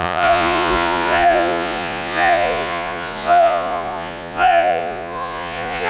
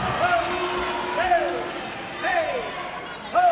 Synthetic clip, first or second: first